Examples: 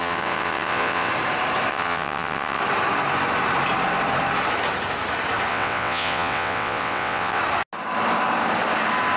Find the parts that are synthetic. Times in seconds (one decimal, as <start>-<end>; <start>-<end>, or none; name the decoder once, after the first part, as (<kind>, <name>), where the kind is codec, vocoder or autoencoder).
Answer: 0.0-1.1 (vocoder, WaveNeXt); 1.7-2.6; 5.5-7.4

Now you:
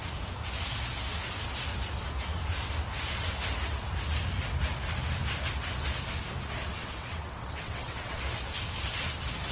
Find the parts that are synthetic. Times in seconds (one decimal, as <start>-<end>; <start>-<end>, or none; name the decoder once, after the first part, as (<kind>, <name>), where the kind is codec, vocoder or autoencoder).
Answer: 6.7-8.2 (vocoder, WaveNeXt)

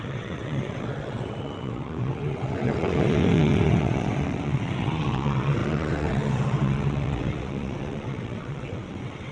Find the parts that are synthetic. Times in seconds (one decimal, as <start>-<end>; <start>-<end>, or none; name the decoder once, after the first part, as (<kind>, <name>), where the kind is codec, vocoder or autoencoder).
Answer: 0.0-9.3 (vocoder, WaveNeXt)